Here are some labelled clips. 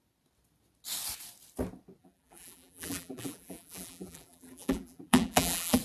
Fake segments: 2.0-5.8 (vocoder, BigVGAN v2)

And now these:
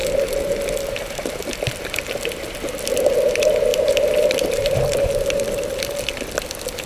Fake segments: 3.7-5.1 (vocoder, BigVGAN v2)

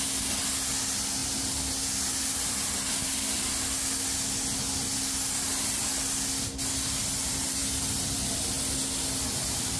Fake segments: none

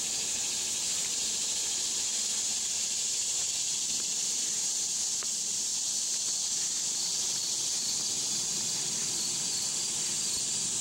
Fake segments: none